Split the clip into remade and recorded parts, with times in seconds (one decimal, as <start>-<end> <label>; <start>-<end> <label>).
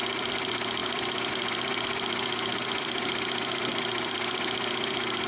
0.0-5.3 remade